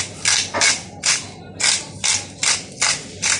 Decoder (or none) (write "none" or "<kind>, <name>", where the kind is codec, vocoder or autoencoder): none